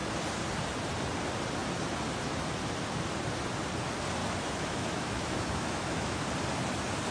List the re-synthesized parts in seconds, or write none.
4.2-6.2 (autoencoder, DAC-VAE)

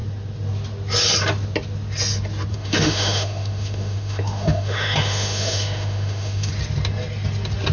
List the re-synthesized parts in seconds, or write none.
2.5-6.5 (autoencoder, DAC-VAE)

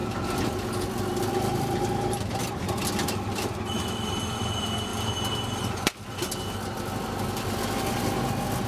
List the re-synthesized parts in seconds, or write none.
1.3-4.9 (vocoder, BigVGAN v2)

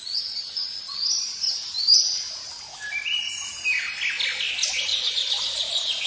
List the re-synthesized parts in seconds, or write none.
none

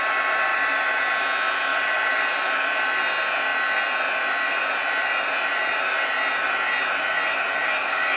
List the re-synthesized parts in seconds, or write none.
0.5-1.1 (vocoder, BigVGAN v2); 1.7-3.0; 7.6-8.2